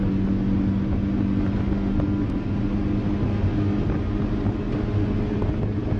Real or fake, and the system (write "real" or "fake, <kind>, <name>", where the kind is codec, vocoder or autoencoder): real